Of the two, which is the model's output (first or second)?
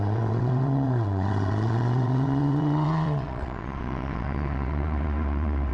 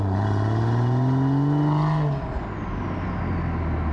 first